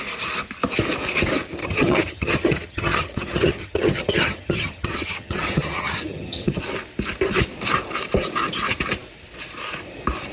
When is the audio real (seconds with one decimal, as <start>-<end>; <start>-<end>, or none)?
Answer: 0.0-1.6; 6.6-10.3